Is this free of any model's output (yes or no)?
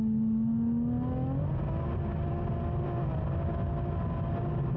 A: yes